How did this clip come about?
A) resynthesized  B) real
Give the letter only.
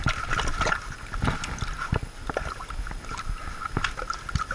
B